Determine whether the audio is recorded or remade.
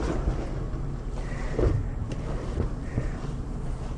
recorded